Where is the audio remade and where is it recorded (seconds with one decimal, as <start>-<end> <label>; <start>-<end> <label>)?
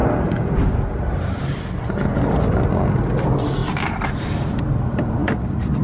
0.0-5.8 recorded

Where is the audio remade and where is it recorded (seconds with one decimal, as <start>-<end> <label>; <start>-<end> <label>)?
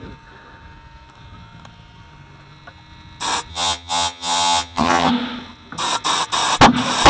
0.0-3.5 recorded; 3.5-5.1 remade; 5.1-7.1 recorded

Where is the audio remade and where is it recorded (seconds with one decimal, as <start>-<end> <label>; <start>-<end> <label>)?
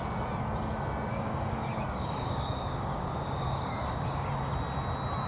0.0-1.1 recorded; 1.1-4.3 remade; 4.3-5.3 recorded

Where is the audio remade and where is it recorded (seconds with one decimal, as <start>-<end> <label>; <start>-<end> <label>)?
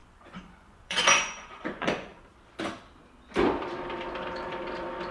0.0-2.1 remade; 2.1-5.1 recorded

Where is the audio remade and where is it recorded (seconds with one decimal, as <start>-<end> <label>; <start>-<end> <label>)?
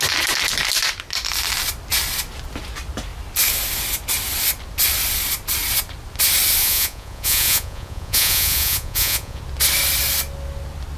0.0-6.6 recorded; 6.6-9.4 remade; 9.4-11.0 recorded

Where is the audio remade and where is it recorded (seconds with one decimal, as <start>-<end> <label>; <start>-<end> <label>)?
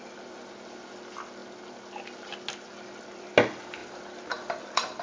0.0-3.8 recorded; 3.8-5.0 remade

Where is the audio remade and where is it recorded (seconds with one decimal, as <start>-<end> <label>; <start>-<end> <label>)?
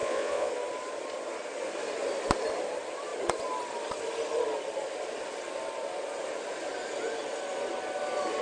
0.0-0.5 remade; 0.5-8.4 recorded